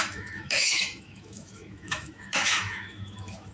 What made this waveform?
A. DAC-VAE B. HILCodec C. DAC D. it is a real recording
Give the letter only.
A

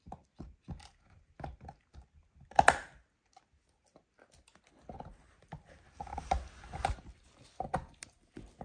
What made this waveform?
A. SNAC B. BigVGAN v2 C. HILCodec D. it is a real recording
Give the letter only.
D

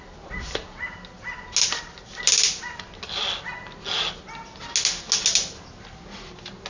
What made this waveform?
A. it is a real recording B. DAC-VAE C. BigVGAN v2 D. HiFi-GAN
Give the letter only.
A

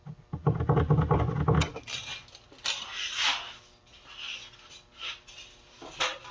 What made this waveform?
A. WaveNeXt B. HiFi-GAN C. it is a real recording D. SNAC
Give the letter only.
C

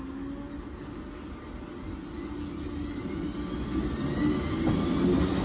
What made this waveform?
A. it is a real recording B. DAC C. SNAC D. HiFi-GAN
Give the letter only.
A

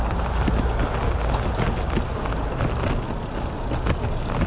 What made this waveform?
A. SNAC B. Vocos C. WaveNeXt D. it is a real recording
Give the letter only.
D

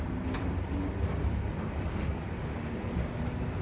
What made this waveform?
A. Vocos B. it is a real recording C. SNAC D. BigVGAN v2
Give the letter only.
B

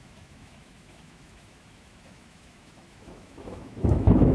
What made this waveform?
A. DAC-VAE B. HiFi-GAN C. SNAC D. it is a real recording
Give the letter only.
A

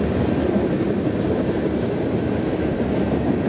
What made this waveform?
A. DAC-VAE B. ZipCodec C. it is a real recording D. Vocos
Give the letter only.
C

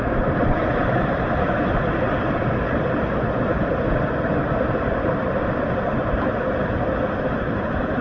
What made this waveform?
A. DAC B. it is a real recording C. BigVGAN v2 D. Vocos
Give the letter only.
B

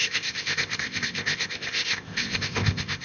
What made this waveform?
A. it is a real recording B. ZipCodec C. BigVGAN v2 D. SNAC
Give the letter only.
B